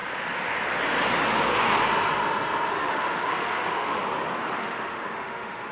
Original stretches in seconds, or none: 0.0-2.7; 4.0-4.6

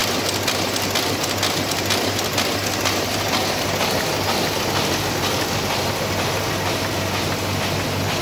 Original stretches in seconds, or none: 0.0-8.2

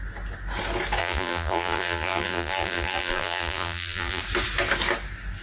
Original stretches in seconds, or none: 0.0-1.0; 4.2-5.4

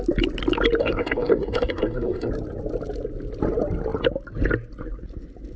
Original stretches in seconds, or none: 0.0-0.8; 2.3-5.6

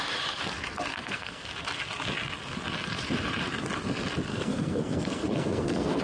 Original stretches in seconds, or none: 0.0-0.9; 1.5-4.3